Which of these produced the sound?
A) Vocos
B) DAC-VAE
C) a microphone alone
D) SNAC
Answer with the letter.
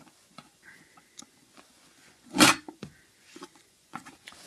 A